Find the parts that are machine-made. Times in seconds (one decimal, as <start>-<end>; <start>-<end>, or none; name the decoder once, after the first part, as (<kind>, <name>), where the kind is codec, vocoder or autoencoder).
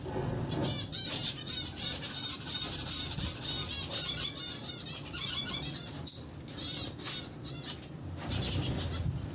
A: 0.6-3.2 (vocoder, BigVGAN v2)